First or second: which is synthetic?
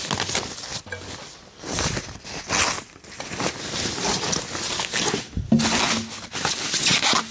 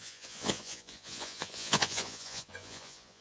second